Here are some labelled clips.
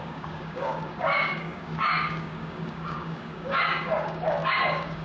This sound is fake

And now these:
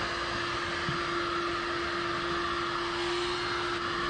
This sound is real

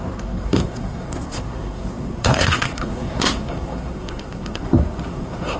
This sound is fake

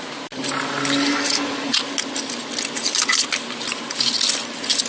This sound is real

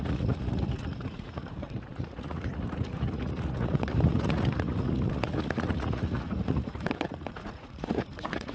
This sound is fake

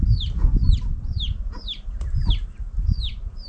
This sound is fake